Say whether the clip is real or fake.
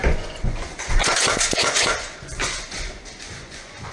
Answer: fake